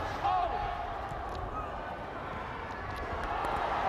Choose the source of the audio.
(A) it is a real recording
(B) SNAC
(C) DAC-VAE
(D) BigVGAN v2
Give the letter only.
A